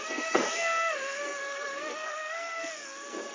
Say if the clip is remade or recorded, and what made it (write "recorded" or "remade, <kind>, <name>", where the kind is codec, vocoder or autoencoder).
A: remade, codec, SNAC